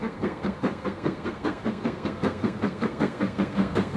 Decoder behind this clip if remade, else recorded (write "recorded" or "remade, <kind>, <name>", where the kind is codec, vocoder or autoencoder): remade, codec, SNAC